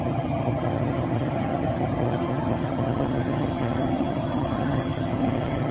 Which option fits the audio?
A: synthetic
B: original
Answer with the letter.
A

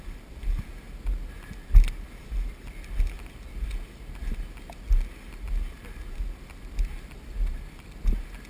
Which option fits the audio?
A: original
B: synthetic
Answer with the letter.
A